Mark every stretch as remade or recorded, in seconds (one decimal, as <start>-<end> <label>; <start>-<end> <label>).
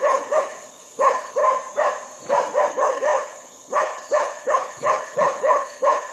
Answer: 0.0-1.4 remade; 1.4-2.7 recorded; 2.7-6.1 remade